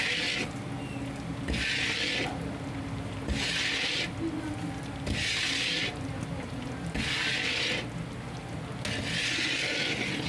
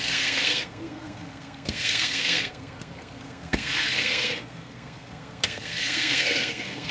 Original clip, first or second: first